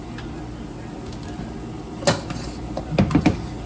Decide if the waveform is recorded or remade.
recorded